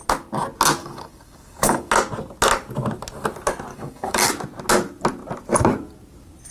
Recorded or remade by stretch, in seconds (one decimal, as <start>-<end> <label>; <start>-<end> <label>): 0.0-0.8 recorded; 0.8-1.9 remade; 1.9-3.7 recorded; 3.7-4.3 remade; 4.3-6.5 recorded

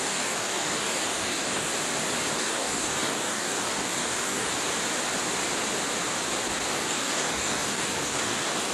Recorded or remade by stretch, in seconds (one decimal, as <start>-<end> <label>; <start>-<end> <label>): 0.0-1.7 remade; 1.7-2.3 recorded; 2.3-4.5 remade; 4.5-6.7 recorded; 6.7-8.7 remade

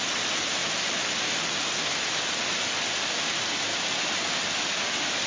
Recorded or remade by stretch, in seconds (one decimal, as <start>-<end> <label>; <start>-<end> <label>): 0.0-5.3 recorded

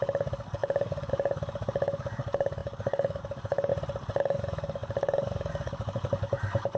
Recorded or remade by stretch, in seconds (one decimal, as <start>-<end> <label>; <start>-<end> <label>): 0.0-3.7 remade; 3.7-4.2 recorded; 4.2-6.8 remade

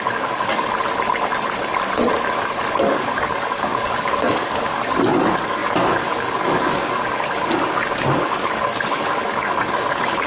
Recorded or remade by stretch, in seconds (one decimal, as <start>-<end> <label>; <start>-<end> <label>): 0.0-0.5 remade; 0.5-2.8 recorded; 2.8-10.3 remade